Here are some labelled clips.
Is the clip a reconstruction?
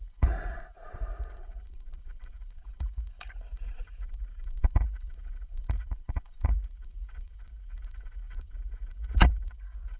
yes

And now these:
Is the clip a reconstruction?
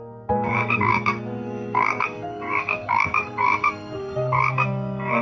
yes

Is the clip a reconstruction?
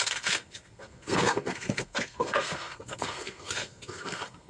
yes